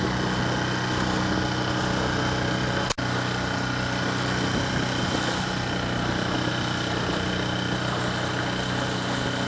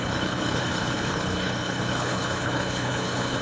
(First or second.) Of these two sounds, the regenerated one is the second